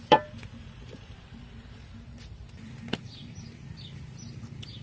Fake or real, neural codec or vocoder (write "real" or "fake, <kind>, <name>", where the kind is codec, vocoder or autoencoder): fake, vocoder, BigVGAN v2